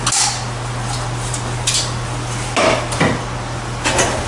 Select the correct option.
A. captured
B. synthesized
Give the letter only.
A